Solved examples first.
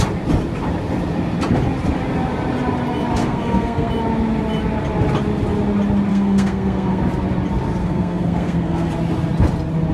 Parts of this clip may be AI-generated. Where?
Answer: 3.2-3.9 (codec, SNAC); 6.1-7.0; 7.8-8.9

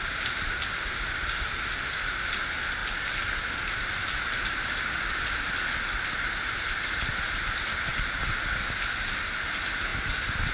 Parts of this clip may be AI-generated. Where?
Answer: none

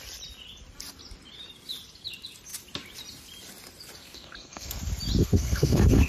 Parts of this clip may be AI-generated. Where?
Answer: 4.0-4.8 (codec, SNAC); 5.2-6.1

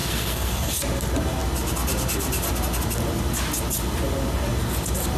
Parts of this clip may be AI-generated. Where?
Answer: 0.0-0.7 (codec, SNAC)

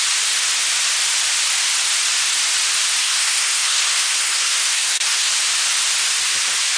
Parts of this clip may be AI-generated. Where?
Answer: 3.0-5.3 (codec, SNAC)

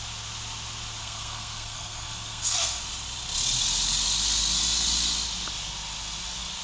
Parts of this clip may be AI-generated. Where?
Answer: 1.0-2.8 (codec, SNAC)